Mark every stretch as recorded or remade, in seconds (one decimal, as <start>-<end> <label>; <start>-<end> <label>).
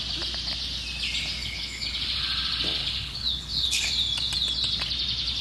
0.0-1.4 recorded; 1.4-1.9 remade; 1.9-2.8 recorded; 2.8-3.9 remade; 3.9-5.4 recorded